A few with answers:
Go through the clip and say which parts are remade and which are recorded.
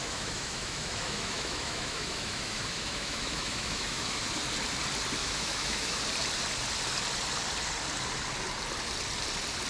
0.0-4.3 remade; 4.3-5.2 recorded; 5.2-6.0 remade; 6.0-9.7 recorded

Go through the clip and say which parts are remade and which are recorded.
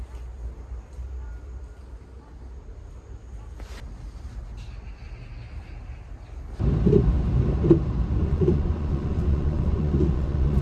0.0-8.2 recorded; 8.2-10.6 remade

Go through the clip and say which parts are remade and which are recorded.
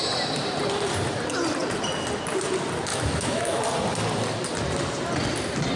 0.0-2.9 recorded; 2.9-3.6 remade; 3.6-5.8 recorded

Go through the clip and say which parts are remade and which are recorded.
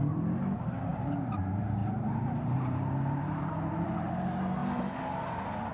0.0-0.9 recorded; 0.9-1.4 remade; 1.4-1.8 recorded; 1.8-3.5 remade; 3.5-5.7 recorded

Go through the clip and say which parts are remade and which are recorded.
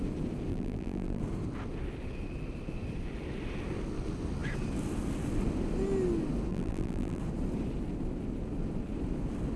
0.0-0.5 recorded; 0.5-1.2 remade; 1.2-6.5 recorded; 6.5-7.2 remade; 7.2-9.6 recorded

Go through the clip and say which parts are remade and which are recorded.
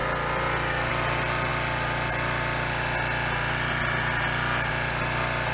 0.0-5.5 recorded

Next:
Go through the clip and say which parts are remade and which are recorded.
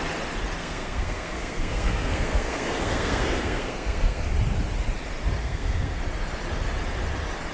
0.0-0.6 recorded; 0.6-4.2 remade; 4.2-5.4 recorded; 5.4-6.0 remade; 6.0-7.5 recorded